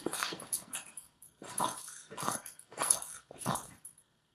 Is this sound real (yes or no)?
no